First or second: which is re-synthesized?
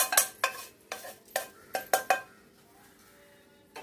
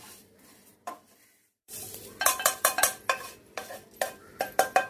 second